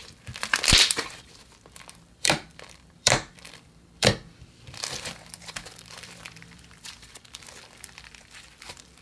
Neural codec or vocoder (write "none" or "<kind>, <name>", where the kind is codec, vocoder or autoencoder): vocoder, BigVGAN v2